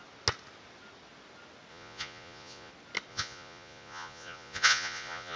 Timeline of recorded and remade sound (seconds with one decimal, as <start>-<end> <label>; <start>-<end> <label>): 0.0-1.7 recorded; 1.7-2.7 remade; 2.7-3.1 recorded; 3.1-5.4 remade